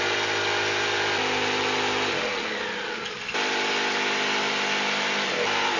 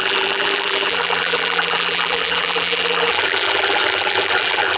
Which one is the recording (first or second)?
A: first